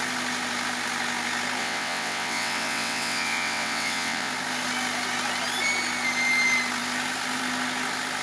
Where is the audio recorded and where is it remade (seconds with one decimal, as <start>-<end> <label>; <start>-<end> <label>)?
0.0-1.6 recorded; 1.6-4.3 remade; 4.3-8.2 recorded